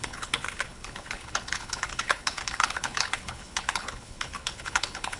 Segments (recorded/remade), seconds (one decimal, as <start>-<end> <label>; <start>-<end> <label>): 0.0-5.2 remade